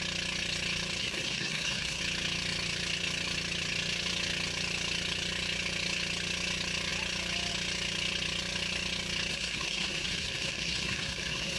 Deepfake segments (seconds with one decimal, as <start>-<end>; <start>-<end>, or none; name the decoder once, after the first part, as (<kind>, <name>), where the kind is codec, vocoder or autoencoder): 1.0-2.0 (codec, SNAC); 9.3-11.6